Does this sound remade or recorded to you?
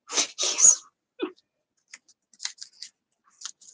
recorded